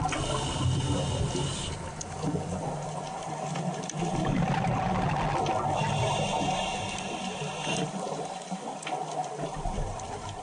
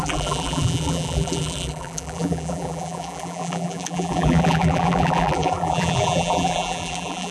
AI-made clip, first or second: second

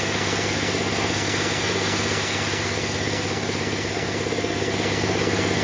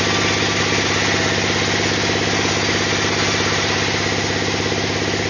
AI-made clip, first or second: first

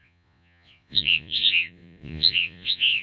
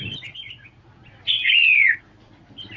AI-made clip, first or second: first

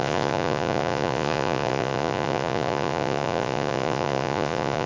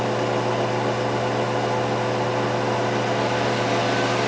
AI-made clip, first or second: first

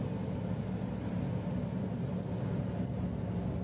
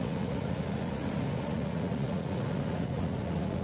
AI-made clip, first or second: second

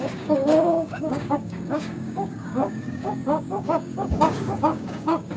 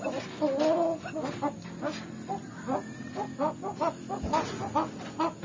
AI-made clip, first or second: first